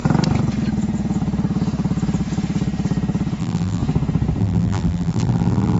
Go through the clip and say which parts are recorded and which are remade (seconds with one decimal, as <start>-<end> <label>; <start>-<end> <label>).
0.0-3.4 recorded; 3.4-3.8 remade; 3.8-4.4 recorded; 4.4-5.8 remade